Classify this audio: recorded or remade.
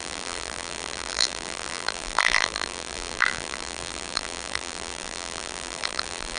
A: remade